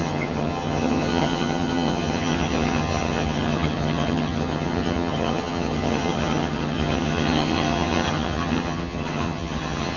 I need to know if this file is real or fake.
fake